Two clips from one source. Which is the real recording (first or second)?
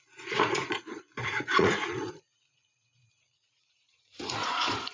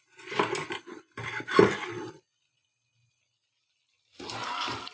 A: second